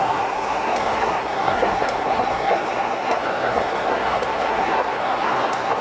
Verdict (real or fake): fake